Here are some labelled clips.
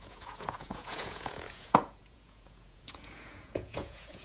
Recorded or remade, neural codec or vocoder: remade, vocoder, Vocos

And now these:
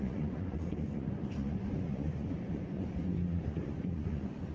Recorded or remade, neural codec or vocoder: remade, vocoder, Vocos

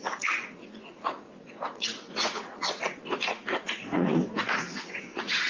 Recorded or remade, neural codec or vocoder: remade, vocoder, Vocos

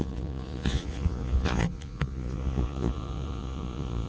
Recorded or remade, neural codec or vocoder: remade, vocoder, Vocos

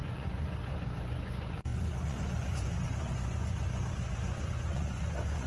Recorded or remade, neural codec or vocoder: remade, vocoder, Vocos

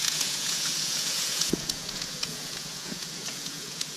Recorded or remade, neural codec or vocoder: remade, vocoder, Vocos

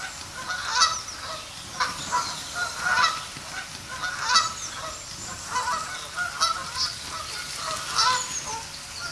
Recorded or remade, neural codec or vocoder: recorded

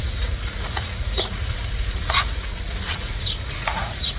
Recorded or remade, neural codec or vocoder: remade, vocoder, Vocos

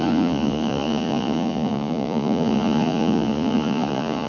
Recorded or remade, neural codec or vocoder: remade, vocoder, Vocos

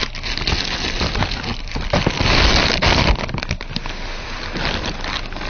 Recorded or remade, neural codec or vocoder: recorded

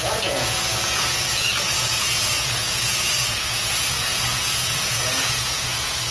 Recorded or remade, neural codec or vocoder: remade, vocoder, Vocos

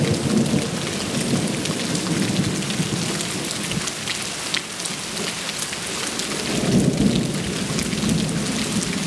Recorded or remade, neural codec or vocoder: recorded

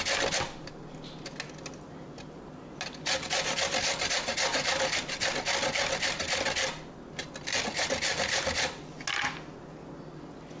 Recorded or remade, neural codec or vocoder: recorded